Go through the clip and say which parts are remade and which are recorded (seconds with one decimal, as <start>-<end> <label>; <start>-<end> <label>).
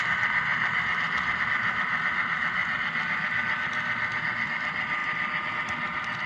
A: 0.0-6.3 recorded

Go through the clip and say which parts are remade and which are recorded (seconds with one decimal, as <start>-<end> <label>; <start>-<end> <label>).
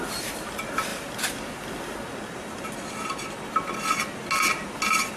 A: 0.0-5.2 recorded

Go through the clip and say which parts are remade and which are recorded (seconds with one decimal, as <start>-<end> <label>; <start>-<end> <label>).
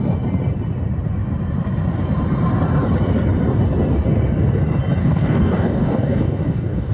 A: 0.0-5.0 recorded; 5.0-6.9 remade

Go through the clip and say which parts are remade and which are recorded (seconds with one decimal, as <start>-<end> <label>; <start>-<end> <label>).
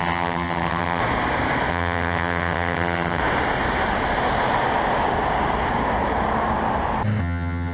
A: 0.0-1.0 remade; 1.0-1.7 recorded; 1.7-3.2 remade; 3.2-7.2 recorded; 7.2-7.7 remade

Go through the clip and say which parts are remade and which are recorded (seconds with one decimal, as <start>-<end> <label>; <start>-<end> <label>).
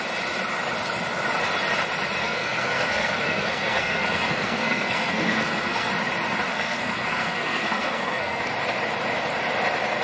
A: 0.0-2.2 recorded; 2.2-5.9 remade; 5.9-6.5 recorded; 6.5-8.4 remade; 8.4-10.0 recorded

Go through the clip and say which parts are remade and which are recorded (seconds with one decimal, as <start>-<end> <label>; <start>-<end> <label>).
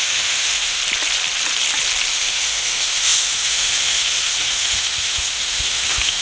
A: 0.0-0.8 remade; 0.8-2.1 recorded; 2.1-6.2 remade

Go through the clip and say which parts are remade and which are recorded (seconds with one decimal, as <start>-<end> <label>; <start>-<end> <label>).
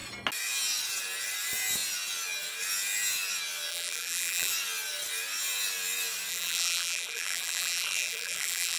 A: 0.0-3.7 recorded; 3.7-4.5 remade; 4.5-6.3 recorded; 6.3-8.8 remade